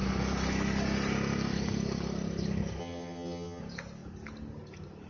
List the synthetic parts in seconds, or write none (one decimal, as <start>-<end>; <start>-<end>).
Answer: 2.8-3.6